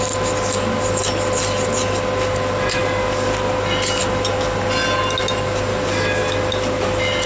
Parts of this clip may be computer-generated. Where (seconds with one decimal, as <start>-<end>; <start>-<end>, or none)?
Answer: none

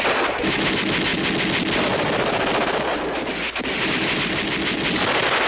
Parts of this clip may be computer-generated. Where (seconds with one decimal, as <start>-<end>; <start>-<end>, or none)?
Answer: none